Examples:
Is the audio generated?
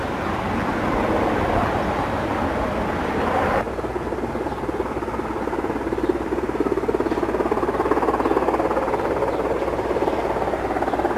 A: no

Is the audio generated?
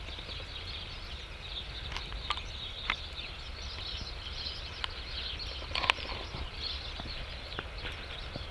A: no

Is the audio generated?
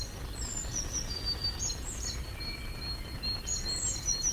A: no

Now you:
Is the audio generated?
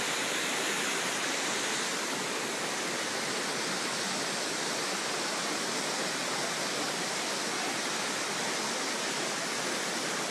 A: no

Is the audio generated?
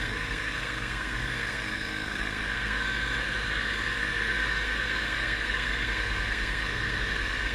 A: yes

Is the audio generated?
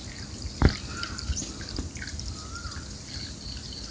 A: no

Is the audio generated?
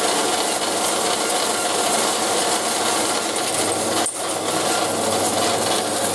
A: no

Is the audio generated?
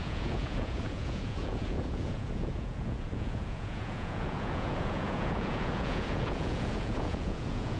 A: yes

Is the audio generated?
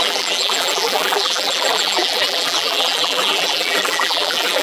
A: yes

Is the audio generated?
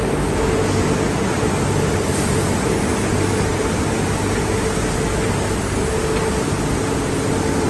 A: no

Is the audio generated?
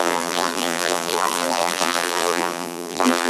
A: yes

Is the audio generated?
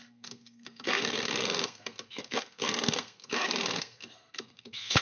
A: yes